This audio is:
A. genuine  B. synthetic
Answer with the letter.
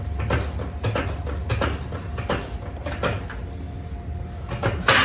A